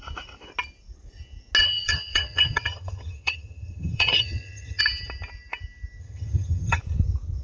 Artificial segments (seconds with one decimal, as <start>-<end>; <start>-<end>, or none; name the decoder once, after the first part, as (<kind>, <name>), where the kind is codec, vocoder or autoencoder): 1.6-4.8 (vocoder, HiFi-GAN); 6.0-6.8